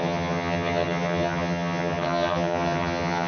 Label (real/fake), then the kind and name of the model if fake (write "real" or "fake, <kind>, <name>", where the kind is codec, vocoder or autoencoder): fake, vocoder, HiFi-GAN